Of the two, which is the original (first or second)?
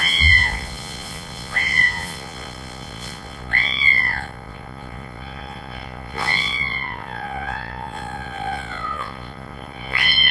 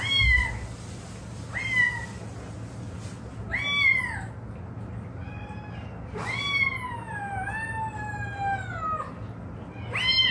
second